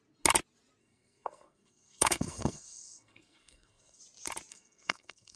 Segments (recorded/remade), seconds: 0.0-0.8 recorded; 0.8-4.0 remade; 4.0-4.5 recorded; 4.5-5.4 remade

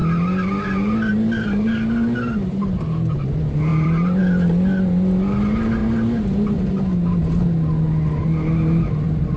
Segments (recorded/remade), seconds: 0.0-3.7 recorded; 3.7-4.2 remade; 4.2-9.4 recorded

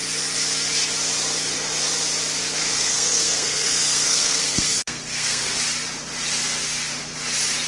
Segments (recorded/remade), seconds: 0.0-2.6 recorded; 2.6-5.6 remade; 5.6-7.7 recorded

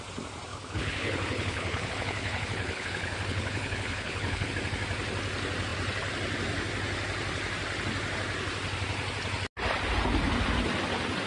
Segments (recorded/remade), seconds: 0.0-0.5 recorded; 0.5-4.5 remade; 4.5-11.3 recorded

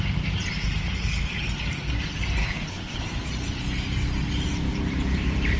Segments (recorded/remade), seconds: 0.0-2.4 recorded; 2.4-3.0 remade; 3.0-5.6 recorded

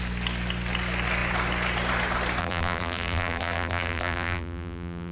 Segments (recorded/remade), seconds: 0.0-2.4 recorded; 2.4-5.1 remade